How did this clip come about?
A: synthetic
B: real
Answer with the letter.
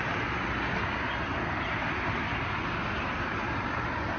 B